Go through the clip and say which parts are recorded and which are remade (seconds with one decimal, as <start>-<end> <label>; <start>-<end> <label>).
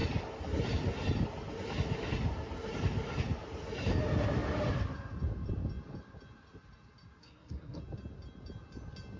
0.0-7.2 recorded; 7.2-7.8 remade; 7.8-9.2 recorded